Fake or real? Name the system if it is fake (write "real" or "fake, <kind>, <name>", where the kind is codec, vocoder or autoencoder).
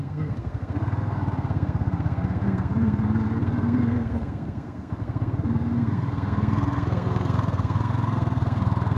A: fake, codec, SNAC